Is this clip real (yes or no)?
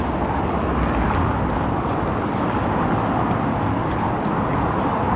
yes